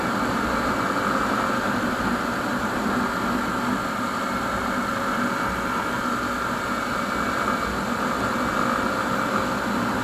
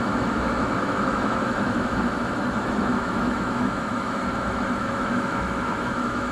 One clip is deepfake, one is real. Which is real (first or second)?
first